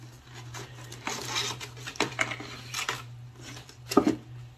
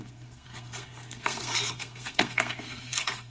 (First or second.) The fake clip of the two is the second